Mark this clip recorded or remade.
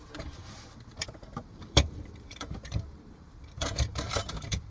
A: remade